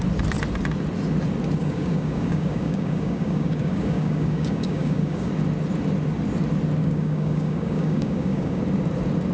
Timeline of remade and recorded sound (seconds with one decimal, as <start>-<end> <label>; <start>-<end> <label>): 0.0-1.6 recorded; 1.6-5.3 remade; 5.3-6.8 recorded; 6.8-8.6 remade; 8.6-9.3 recorded